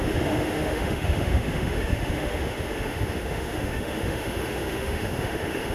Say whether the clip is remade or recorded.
remade